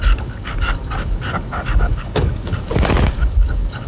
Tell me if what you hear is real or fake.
fake